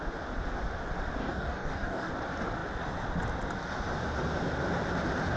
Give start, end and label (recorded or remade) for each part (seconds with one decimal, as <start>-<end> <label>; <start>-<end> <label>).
0.0-1.2 recorded; 1.2-2.1 remade; 2.1-5.4 recorded